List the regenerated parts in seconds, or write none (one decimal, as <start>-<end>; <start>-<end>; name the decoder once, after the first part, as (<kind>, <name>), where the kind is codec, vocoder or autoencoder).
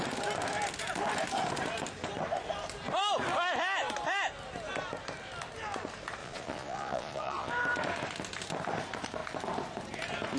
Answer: 6.2-7.5 (vocoder, Vocos)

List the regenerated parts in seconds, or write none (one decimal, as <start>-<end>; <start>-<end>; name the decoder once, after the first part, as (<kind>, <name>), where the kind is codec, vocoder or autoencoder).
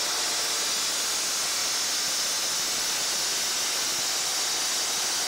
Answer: none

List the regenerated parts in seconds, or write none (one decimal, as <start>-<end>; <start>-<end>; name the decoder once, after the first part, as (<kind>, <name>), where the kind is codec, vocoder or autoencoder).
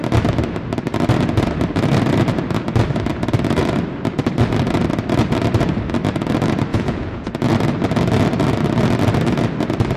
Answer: 6.7-7.3 (vocoder, Vocos)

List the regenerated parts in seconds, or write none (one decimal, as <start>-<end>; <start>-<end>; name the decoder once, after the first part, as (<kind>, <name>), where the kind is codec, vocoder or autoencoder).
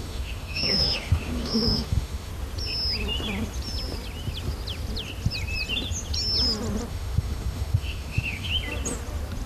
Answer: 0.0-2.3 (autoencoder, DAC-VAE); 6.9-8.5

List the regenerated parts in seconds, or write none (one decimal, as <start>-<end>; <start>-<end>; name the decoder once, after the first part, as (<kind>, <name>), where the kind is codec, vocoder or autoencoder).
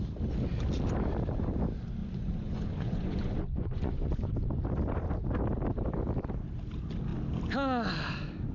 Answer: 2.0-4.3 (vocoder, Vocos)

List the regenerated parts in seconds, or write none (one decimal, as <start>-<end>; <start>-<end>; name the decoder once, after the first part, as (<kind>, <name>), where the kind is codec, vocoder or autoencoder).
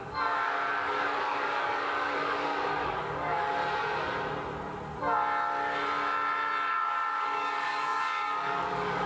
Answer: 0.0-3.6 (codec, DAC); 6.7-9.1